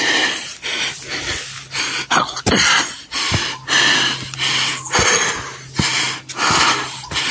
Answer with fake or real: real